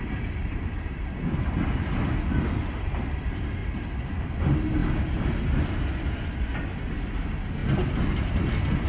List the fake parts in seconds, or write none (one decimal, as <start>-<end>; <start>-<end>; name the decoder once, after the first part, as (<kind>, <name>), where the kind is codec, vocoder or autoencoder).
0.4-1.2 (vocoder, BigVGAN v2); 3.6-4.3